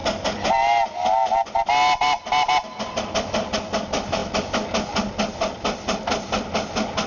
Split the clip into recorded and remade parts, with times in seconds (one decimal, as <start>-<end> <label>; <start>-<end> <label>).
0.0-7.1 recorded